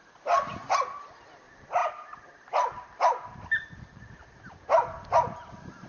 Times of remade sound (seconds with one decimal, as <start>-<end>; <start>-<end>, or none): none